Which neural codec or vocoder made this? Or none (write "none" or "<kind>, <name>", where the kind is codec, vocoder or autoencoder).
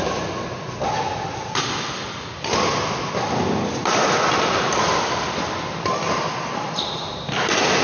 none